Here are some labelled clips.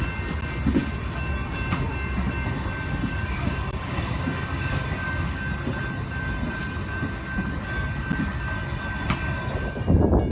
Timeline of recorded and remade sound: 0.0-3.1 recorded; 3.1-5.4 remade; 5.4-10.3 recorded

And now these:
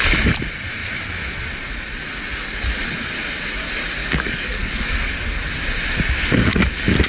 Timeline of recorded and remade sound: 0.0-4.0 recorded; 4.0-5.1 remade; 5.1-7.1 recorded

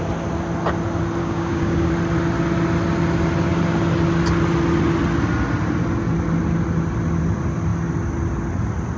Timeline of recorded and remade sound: 0.0-1.2 recorded; 1.2-1.9 remade; 1.9-9.0 recorded

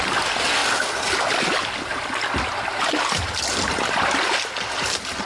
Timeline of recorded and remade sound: 0.0-5.2 recorded

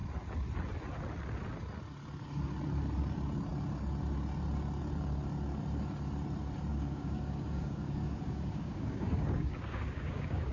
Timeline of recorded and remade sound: 0.0-6.7 recorded; 6.7-10.5 remade